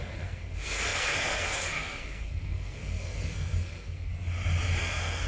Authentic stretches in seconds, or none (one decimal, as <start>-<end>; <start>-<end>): 4.1-4.8

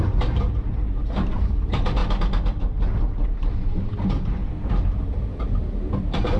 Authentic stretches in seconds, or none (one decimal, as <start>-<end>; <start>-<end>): 2.0-3.9; 4.4-6.0

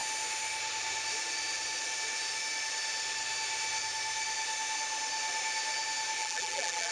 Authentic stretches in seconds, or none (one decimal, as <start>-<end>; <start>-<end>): 0.0-6.2

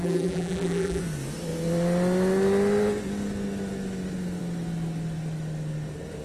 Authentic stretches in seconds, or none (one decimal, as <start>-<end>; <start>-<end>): 1.0-6.2

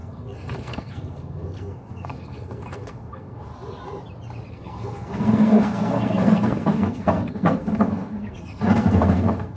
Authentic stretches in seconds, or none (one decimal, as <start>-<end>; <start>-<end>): 3.5-4.5

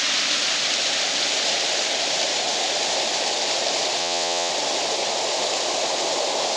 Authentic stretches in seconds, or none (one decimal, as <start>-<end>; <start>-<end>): 0.0-4.0; 4.5-6.6

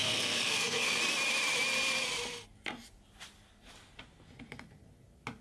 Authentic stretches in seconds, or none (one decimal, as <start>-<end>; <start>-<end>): 1.0-5.4